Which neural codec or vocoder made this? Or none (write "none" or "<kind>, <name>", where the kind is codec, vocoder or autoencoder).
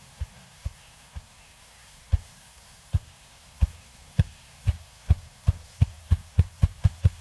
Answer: codec, SNAC